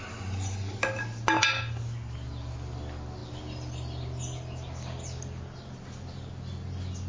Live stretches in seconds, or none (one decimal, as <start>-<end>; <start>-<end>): 0.0-7.1